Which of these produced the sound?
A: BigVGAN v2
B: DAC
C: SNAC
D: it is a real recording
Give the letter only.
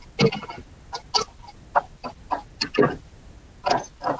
D